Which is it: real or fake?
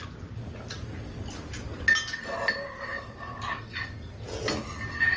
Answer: real